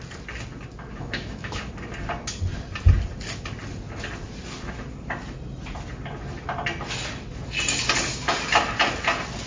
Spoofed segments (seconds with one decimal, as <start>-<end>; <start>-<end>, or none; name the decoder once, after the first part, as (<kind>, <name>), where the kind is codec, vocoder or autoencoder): 0.9-1.7 (autoencoder, DAC-VAE)